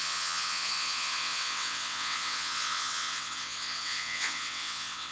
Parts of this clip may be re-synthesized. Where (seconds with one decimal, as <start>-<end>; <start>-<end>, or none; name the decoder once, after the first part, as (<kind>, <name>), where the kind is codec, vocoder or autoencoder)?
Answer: 0.0-5.1 (vocoder, WaveNeXt)